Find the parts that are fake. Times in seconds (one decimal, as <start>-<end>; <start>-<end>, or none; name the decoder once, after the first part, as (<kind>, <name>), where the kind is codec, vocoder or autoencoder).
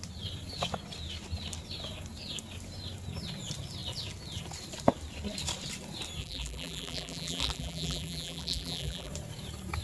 6.2-9.1 (vocoder, BigVGAN v2)